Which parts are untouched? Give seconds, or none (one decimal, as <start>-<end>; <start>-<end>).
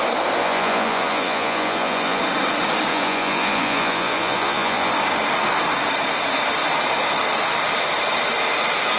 0.0-0.4; 2.2-2.9; 4.9-9.0